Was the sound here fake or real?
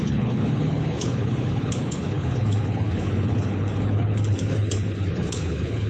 fake